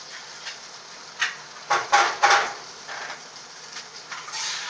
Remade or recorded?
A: remade